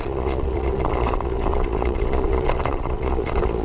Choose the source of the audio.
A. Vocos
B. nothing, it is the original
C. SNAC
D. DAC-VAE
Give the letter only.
A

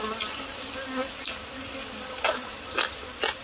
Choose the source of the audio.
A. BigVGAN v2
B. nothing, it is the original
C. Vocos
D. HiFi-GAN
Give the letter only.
A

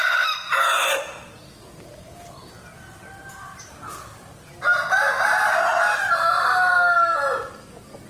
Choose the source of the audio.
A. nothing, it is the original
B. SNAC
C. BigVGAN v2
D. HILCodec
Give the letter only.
A